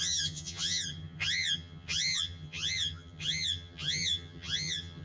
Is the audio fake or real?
fake